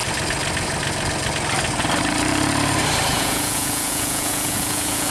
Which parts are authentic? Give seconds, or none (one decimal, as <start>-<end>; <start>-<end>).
0.0-3.1